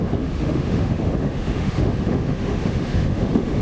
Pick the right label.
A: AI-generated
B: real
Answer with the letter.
A